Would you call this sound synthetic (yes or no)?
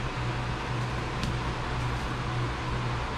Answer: no